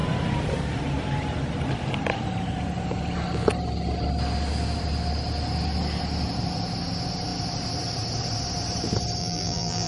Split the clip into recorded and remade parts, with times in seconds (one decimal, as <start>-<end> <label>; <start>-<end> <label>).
0.0-9.2 recorded; 9.2-9.9 remade